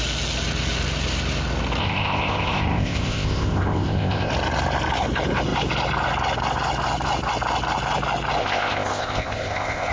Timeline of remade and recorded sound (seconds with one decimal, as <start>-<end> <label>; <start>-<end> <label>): 0.0-1.8 recorded; 1.8-4.3 remade; 4.3-8.4 recorded; 8.4-9.9 remade